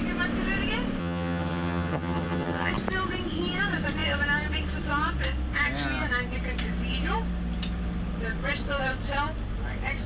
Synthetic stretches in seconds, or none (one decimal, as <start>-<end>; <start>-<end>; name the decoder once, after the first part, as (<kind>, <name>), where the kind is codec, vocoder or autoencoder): 1.0-2.7 (vocoder, HiFi-GAN)